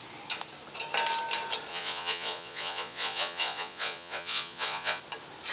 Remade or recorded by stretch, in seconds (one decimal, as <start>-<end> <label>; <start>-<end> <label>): 0.0-1.7 recorded; 1.7-5.0 remade; 5.0-5.5 recorded